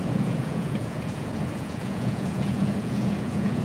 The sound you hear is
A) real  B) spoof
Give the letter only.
B